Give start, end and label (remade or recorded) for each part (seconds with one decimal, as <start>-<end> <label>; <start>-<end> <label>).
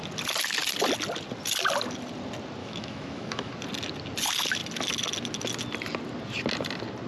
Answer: 0.0-2.6 recorded; 2.6-3.5 remade; 3.5-7.1 recorded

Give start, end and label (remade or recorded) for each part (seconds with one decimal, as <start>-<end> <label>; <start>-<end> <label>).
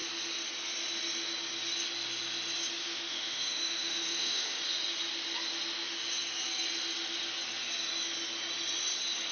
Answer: 0.0-2.8 recorded; 2.8-4.6 remade; 4.6-9.3 recorded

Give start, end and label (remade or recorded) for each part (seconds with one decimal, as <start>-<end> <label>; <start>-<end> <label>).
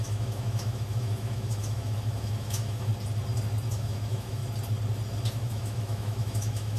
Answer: 0.0-2.9 remade; 2.9-3.7 recorded; 3.7-4.4 remade; 4.4-5.3 recorded; 5.3-6.8 remade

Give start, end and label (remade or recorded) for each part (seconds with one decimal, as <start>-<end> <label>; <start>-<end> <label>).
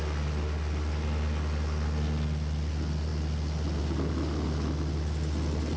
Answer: 0.0-5.8 recorded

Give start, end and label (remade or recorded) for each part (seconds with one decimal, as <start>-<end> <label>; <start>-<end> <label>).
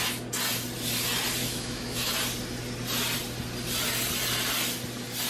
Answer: 0.0-1.4 recorded; 1.4-2.1 remade; 2.1-5.3 recorded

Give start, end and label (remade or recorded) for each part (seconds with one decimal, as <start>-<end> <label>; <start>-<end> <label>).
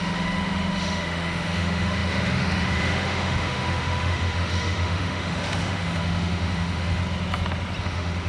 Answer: 0.0-7.0 remade; 7.0-7.8 recorded; 7.8-8.3 remade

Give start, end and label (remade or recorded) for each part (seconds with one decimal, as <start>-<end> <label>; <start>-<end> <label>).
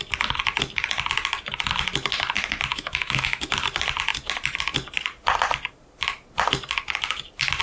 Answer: 0.0-2.7 recorded; 2.7-3.5 remade; 3.5-7.6 recorded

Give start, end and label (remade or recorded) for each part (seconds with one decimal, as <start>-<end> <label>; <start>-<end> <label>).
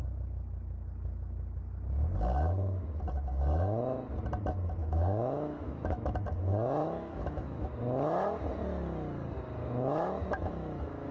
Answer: 0.0-4.8 recorded; 4.8-6.1 remade; 6.1-6.8 recorded; 6.8-7.8 remade; 7.8-9.6 recorded; 9.6-11.1 remade